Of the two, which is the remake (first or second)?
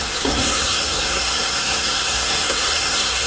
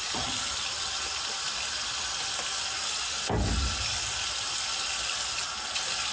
first